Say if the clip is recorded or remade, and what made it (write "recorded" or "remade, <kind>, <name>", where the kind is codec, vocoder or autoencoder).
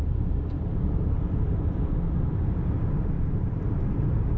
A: remade, vocoder, BigVGAN v2